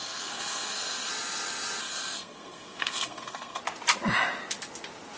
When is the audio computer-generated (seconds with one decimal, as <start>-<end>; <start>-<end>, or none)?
0.0-1.1; 1.8-3.6